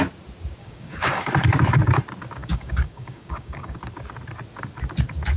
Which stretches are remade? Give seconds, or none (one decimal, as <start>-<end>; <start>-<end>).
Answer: 0.6-1.3; 2.4-3.8